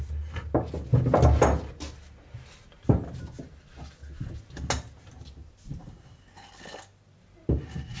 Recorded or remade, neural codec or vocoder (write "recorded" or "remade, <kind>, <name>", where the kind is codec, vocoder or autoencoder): recorded